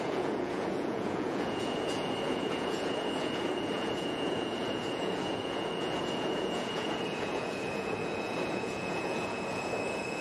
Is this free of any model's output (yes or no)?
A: no